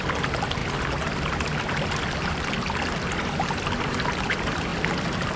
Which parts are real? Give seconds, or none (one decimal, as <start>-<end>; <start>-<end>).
0.0-5.4